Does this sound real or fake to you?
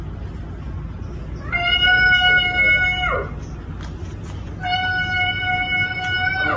real